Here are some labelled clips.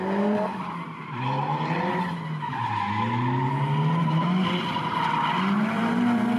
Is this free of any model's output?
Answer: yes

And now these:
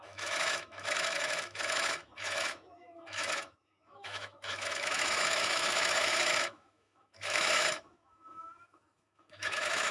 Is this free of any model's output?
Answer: no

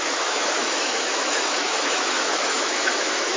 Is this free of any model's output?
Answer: no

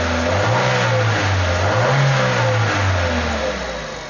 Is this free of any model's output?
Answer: yes